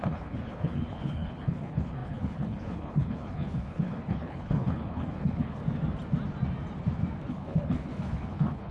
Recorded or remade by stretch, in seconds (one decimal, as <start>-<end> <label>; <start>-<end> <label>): 0.0-5.6 remade; 5.6-7.3 recorded; 7.3-8.7 remade